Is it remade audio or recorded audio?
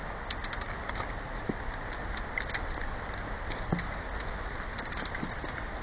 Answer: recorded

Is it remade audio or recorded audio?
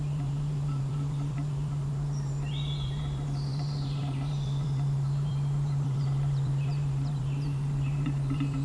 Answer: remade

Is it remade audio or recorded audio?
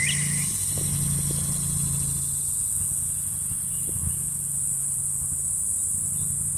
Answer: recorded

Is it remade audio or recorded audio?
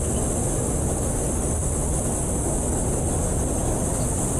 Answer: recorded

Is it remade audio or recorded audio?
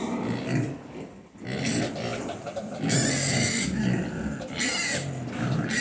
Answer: recorded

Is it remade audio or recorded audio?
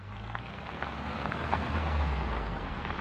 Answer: remade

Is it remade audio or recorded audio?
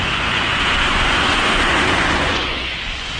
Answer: remade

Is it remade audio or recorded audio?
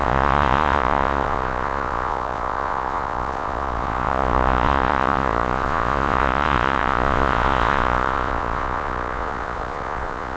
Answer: remade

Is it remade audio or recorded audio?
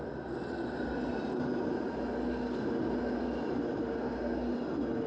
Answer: recorded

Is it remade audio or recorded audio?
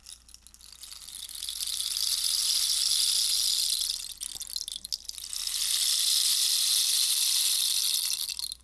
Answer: recorded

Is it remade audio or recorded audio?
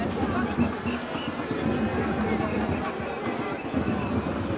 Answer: recorded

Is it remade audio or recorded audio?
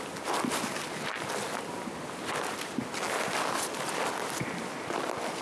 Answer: recorded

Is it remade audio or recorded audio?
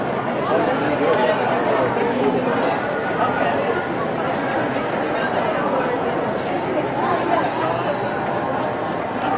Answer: recorded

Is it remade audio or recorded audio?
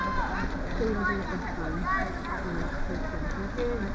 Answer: recorded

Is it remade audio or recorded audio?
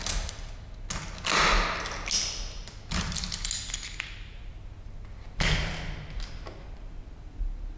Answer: recorded